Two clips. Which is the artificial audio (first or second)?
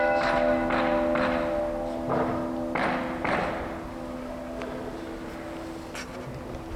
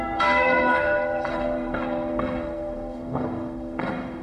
second